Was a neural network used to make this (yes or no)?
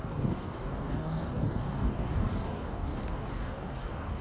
yes